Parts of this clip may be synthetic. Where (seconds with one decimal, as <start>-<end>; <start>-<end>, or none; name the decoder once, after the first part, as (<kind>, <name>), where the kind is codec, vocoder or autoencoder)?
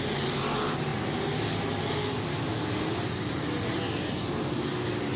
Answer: none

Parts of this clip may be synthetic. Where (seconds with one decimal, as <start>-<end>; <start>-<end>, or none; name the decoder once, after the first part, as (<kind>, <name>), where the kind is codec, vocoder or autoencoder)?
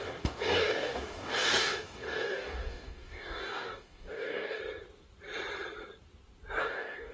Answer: 0.0-4.6 (codec, DAC); 6.6-7.1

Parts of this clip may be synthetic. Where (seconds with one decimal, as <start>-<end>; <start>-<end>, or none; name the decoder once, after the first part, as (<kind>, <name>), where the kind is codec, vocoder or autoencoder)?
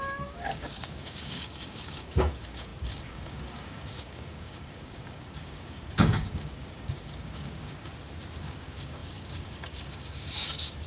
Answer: 0.0-7.9 (codec, DAC); 8.4-10.9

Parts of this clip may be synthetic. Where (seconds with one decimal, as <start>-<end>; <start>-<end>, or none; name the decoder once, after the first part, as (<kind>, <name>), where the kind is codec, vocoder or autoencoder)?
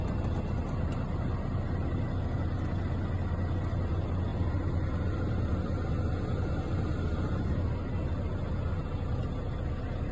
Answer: none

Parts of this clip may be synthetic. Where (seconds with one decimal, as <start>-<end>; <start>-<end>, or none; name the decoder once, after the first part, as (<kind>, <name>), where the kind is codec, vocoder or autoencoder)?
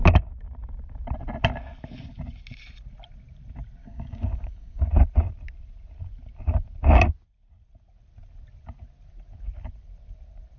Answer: 3.8-4.9 (codec, DAC)